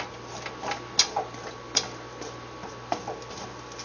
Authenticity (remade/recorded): recorded